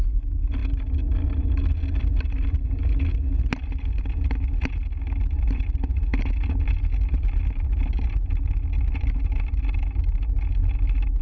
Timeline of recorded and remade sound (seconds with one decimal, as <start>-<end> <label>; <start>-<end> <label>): 0.0-11.2 recorded